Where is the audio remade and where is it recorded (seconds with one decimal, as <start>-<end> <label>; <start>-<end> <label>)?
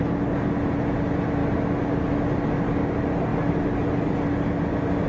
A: 0.0-5.1 recorded